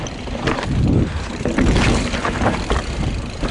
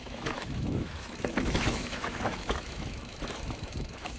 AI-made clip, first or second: second